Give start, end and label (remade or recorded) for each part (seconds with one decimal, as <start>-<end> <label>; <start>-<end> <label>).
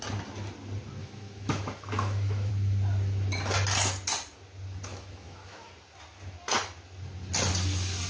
0.0-1.0 recorded; 1.0-2.5 remade; 2.5-4.9 recorded; 4.9-5.7 remade; 5.7-8.1 recorded